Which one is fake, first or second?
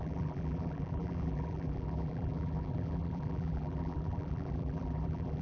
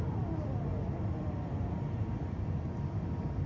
first